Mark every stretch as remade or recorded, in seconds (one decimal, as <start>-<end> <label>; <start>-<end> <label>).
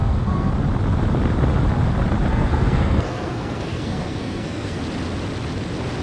0.0-0.5 remade; 0.5-2.3 recorded; 2.3-4.8 remade; 4.8-6.0 recorded